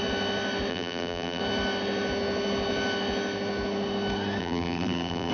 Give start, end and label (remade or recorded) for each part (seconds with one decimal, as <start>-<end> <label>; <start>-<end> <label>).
0.0-0.7 recorded; 0.7-1.4 remade; 1.4-4.4 recorded; 4.4-5.3 remade